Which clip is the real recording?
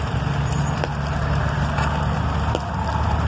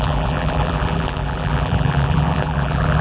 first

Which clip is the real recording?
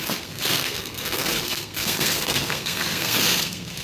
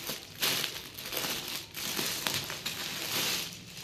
second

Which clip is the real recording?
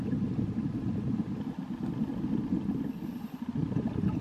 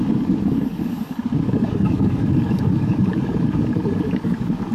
first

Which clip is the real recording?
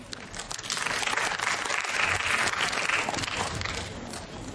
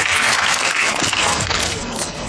first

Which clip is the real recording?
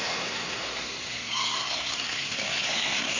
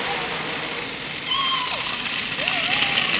second